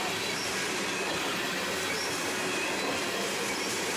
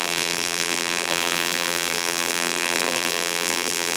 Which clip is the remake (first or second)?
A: second